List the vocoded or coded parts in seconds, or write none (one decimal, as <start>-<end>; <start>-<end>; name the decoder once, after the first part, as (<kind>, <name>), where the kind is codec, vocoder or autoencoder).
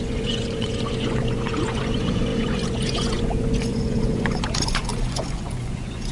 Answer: 0.0-6.1 (vocoder, Vocos)